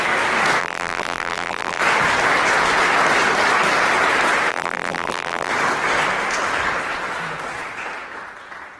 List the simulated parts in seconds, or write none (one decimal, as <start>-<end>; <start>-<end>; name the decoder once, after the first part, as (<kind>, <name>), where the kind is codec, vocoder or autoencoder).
0.6-1.8 (vocoder, BigVGAN v2); 4.5-5.5